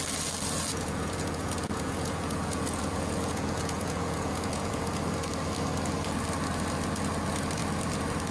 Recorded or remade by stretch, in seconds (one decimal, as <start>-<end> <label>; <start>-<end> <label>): 0.0-0.7 recorded; 0.7-4.8 remade; 4.8-8.3 recorded